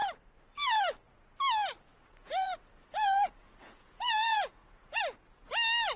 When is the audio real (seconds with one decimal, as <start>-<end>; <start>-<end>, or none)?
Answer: 0.0-1.9; 5.0-6.0